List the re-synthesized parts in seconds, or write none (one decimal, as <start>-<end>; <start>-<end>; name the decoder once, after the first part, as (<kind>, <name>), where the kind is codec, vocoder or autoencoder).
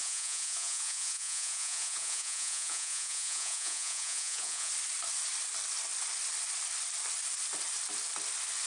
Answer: 0.0-4.7 (vocoder, Vocos)